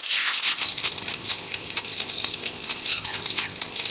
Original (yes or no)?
no